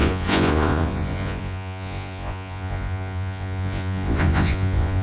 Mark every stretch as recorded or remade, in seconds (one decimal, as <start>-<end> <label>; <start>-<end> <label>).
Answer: 0.0-5.0 remade